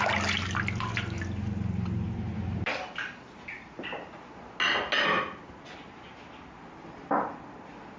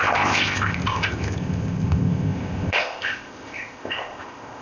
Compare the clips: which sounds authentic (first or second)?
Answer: first